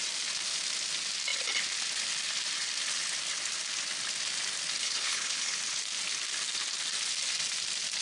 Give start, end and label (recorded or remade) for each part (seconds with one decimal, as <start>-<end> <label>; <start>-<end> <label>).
0.0-4.8 recorded; 4.8-5.6 remade; 5.6-8.0 recorded

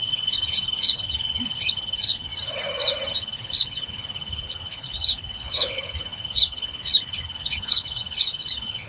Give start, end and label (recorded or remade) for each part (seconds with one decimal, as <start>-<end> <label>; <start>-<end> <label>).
0.0-2.3 remade; 2.3-3.1 recorded; 3.1-8.9 remade

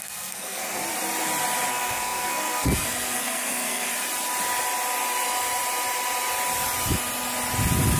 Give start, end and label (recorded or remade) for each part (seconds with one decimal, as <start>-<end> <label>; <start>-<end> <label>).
0.0-0.8 remade; 0.8-1.7 recorded; 1.7-3.9 remade; 3.9-8.0 recorded

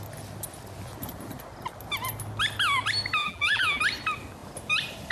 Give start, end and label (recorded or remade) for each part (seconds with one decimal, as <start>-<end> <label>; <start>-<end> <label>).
0.0-3.2 recorded; 3.2-3.8 remade; 3.8-5.1 recorded

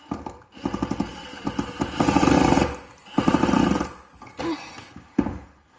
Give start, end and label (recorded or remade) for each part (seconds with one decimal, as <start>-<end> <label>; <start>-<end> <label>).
0.0-5.8 recorded

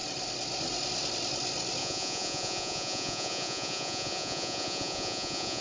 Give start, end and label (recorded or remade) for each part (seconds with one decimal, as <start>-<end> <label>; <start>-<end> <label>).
0.0-1.8 recorded; 1.8-5.6 remade

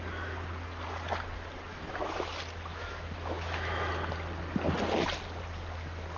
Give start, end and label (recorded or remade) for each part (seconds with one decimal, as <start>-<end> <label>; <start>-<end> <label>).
0.0-1.7 recorded; 1.7-2.3 remade; 2.3-2.7 recorded; 2.7-3.9 remade; 3.9-6.2 recorded

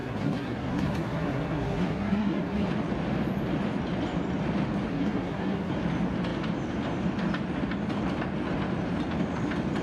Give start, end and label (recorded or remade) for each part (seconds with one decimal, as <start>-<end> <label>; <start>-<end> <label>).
0.0-2.7 remade; 2.7-4.9 recorded; 4.9-5.7 remade; 5.7-9.8 recorded